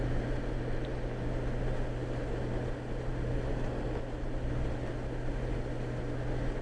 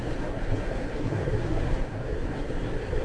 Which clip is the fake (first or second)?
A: second